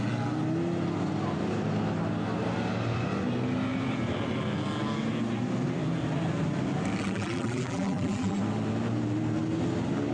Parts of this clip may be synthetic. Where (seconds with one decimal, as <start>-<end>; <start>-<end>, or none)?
7.0-8.4